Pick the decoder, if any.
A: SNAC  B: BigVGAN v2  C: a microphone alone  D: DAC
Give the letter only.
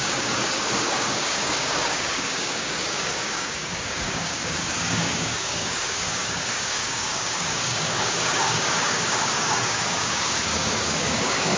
D